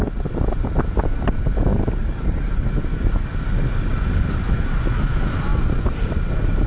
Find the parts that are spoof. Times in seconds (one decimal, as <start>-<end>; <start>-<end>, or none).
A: none